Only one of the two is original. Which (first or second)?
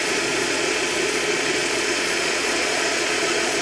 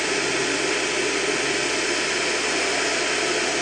second